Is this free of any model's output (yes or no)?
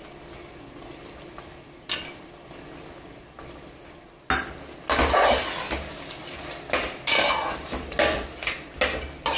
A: yes